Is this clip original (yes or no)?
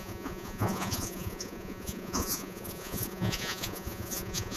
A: no